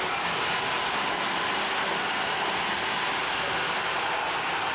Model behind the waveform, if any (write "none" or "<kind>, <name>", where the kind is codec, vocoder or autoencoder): none